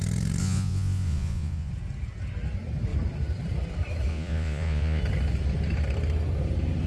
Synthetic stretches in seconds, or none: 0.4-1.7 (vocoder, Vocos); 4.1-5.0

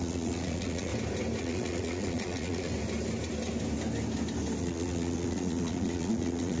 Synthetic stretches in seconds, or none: 0.0-0.9 (vocoder, Vocos); 1.4-2.7; 4.6-6.6

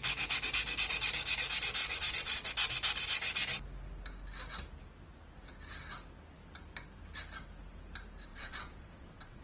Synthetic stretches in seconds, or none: 1.8-2.5 (vocoder, WaveNeXt); 8.3-9.4

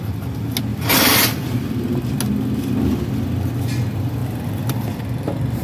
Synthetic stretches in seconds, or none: 0.7-2.1 (vocoder, BigVGAN v2); 4.2-5.0

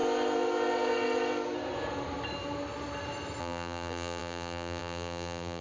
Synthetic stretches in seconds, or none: 3.4-5.6 (vocoder, BigVGAN v2)

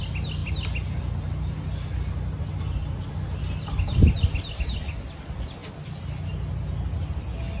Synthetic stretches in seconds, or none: none

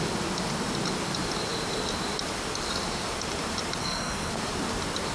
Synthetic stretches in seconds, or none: 3.8-4.3 (codec, SNAC)

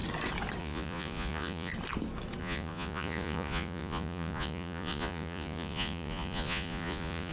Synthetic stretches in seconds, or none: 0.6-1.7 (vocoder, Vocos); 2.4-7.3